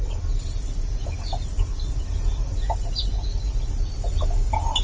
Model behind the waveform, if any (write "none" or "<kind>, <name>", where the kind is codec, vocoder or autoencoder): none